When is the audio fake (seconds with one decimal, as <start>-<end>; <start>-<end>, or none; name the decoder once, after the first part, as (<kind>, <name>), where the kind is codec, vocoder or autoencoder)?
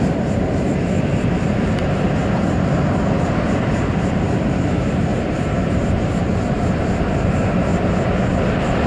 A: 0.0-7.7 (vocoder, BigVGAN v2); 8.4-8.9